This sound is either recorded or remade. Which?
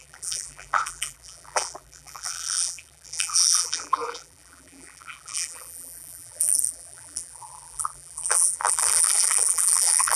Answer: remade